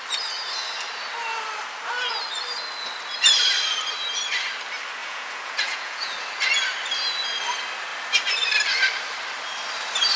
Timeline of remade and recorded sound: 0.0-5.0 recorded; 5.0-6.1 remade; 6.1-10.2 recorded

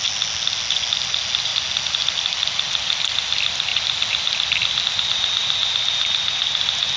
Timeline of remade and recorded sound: 0.0-7.0 recorded

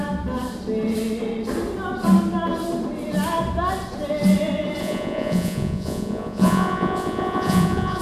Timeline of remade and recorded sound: 0.0-4.8 recorded; 4.8-8.0 remade